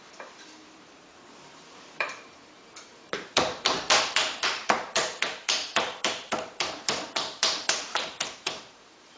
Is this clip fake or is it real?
fake